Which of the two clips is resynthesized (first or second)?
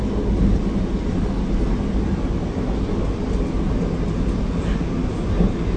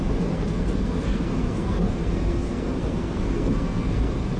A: second